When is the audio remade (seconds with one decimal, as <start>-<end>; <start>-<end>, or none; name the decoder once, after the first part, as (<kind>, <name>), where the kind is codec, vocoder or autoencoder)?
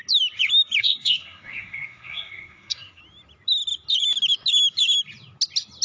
0.8-3.0 (codec, SNAC)